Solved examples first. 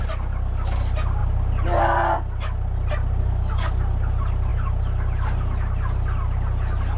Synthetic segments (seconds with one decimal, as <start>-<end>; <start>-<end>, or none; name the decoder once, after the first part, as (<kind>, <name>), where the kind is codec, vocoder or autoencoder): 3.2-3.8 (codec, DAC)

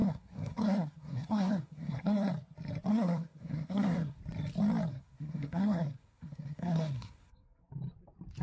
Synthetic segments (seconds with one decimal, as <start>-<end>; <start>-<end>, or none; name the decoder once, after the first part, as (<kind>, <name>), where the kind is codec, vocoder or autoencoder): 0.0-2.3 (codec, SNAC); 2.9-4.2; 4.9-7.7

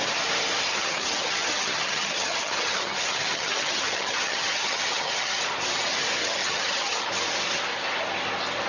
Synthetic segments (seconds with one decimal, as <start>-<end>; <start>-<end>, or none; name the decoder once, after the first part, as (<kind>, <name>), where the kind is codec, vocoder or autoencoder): 0.7-5.4 (vocoder, HiFi-GAN); 6.2-7.1